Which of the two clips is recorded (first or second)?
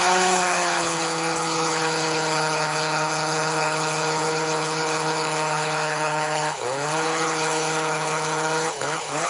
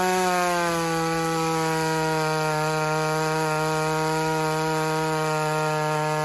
second